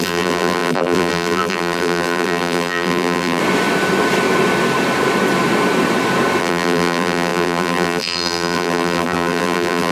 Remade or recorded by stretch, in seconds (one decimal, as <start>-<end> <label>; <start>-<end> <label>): 0.0-3.4 remade; 3.4-6.4 recorded; 6.4-9.9 remade